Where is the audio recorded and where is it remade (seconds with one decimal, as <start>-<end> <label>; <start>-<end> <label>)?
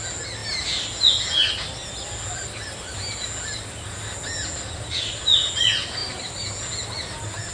0.0-7.5 recorded